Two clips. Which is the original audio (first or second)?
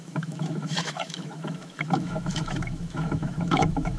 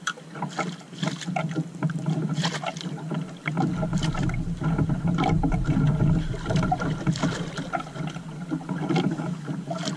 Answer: second